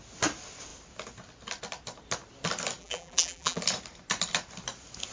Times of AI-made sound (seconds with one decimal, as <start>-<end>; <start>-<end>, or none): 2.8-3.6